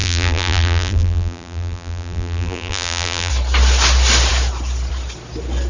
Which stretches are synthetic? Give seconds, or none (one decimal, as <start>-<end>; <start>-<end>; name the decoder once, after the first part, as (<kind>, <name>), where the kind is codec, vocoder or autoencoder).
0.0-3.3 (vocoder, BigVGAN v2)